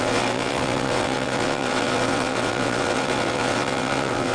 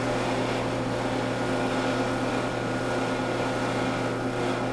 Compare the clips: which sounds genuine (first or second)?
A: second